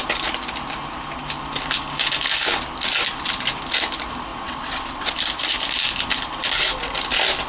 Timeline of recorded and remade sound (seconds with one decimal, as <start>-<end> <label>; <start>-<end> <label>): 0.0-4.3 recorded; 4.3-5.1 remade; 5.1-7.5 recorded